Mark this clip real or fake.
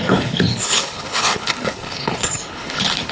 fake